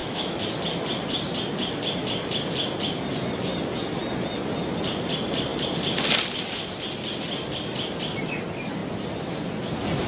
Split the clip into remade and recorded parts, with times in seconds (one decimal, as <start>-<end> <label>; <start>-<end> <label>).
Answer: 0.0-0.5 remade; 0.5-10.1 recorded